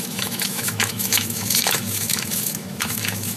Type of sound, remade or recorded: remade